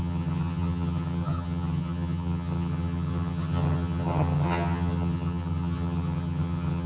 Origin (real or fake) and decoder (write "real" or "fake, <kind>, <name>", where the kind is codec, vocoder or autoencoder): fake, vocoder, HiFi-GAN